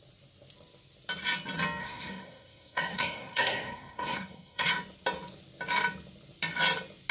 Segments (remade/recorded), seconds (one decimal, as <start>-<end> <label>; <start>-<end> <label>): 0.0-1.8 recorded; 1.8-4.7 remade; 4.7-7.1 recorded